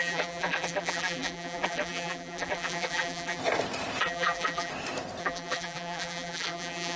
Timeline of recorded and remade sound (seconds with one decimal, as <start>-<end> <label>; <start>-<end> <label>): 0.0-3.4 remade; 3.4-4.0 recorded; 4.0-4.7 remade; 4.7-5.2 recorded; 5.2-7.0 remade